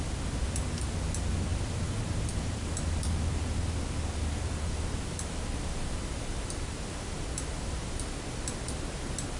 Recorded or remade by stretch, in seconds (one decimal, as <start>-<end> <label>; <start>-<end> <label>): 0.0-9.4 recorded